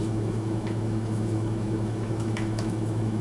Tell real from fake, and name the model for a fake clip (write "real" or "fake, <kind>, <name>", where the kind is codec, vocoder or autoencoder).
fake, autoencoder, DAC-VAE